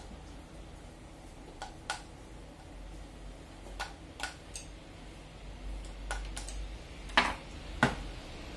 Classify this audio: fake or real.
real